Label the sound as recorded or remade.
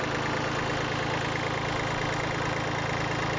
recorded